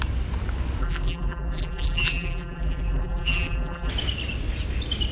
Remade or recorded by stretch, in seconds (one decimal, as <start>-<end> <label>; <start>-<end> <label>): 0.0-0.8 recorded; 0.8-3.9 remade; 3.9-5.1 recorded